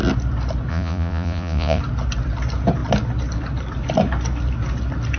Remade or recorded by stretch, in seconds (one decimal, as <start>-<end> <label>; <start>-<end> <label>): 0.0-0.7 recorded; 0.7-1.8 remade; 1.8-5.2 recorded